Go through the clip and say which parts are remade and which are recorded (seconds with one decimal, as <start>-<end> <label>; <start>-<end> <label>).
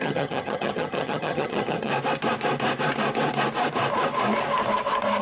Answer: 0.0-1.9 remade; 1.9-5.2 recorded